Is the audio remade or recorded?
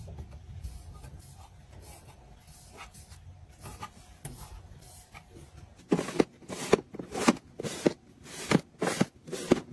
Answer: recorded